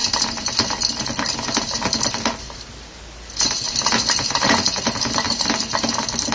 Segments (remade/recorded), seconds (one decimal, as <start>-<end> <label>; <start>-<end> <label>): 0.0-6.3 recorded

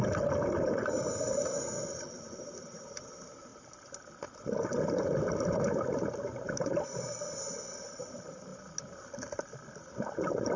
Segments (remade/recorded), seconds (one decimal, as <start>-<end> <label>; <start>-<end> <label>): 0.0-10.6 recorded

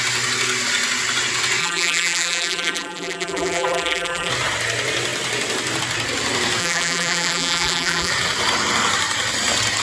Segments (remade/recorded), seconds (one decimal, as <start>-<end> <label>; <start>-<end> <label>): 0.0-1.6 recorded; 1.6-4.3 remade; 4.3-6.6 recorded; 6.6-8.1 remade; 8.1-9.8 recorded

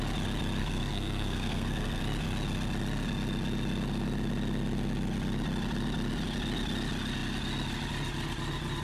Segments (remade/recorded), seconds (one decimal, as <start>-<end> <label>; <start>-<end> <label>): 0.0-0.6 recorded; 0.6-2.0 remade; 2.0-8.8 recorded

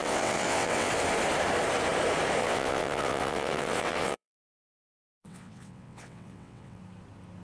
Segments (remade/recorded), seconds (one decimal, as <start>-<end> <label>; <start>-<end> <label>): 0.0-0.9 remade; 0.9-2.4 recorded; 2.4-6.8 remade; 6.8-7.4 recorded

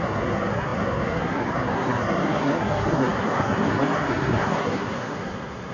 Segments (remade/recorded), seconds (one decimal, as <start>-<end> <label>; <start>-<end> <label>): 0.0-5.7 remade

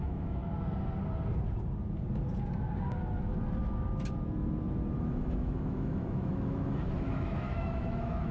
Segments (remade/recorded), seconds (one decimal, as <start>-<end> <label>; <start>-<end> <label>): 0.0-0.4 remade; 0.4-5.0 recorded; 5.0-8.3 remade

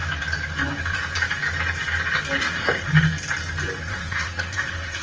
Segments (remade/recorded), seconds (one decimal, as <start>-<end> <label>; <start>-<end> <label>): 0.0-2.4 recorded; 2.4-2.9 remade; 2.9-3.8 recorded; 3.8-5.0 remade